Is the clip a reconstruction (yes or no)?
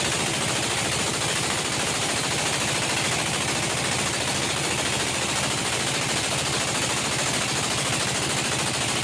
no